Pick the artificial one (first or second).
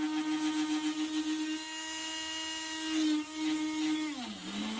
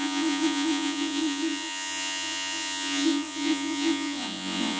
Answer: second